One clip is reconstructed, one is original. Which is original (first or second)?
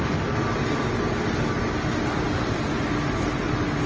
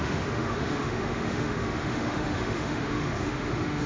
first